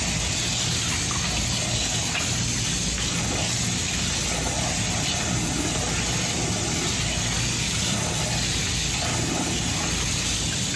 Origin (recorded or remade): recorded